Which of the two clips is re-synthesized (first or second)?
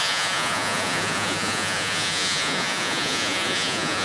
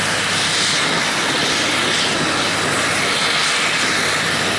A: first